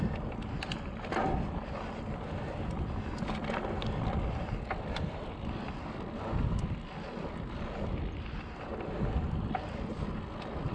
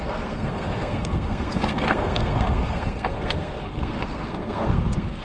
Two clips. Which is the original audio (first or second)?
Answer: first